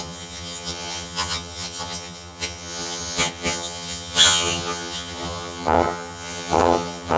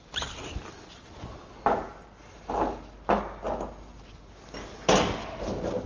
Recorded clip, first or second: second